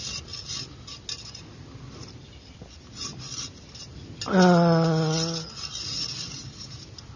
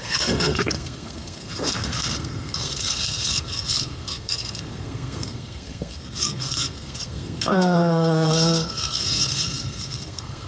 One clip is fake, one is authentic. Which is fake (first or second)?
second